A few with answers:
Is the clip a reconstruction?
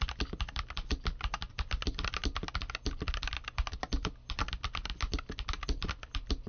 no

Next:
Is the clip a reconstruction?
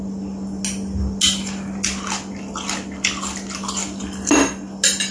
no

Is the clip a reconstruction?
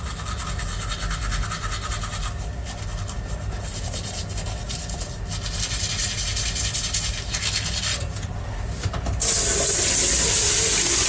no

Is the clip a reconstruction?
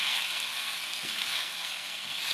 yes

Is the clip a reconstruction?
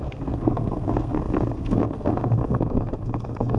yes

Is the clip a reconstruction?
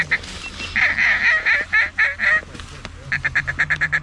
no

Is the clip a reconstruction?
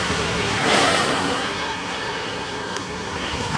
yes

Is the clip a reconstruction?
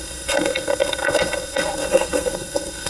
yes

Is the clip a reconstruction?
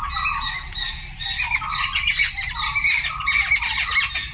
no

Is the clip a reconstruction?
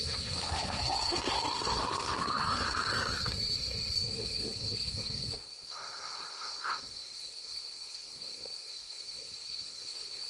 yes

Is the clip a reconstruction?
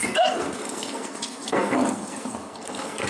yes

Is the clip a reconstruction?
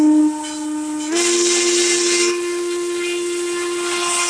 no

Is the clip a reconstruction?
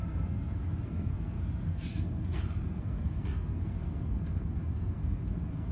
yes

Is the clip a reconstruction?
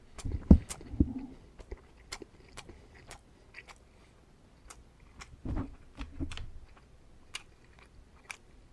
no